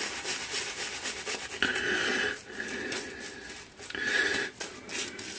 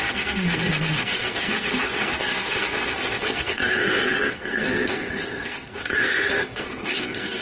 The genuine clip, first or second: first